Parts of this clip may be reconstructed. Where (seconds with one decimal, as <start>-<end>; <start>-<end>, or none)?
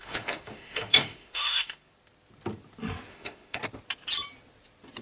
0.0-1.9; 3.1-3.6